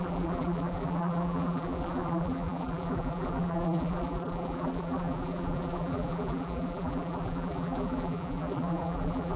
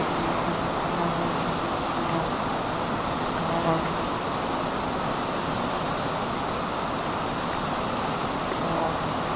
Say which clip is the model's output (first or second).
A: first